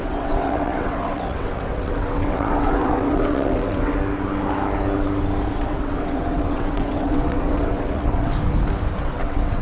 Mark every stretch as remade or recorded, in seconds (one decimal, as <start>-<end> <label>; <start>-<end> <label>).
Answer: 0.0-3.9 remade; 3.9-5.5 recorded; 5.5-8.3 remade; 8.3-9.0 recorded; 9.0-9.6 remade